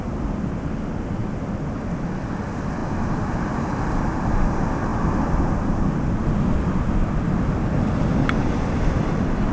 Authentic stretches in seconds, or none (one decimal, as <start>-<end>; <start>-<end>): 0.0-9.5